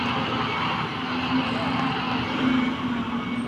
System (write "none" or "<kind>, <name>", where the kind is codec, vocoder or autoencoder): none